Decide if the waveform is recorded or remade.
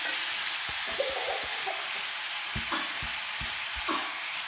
recorded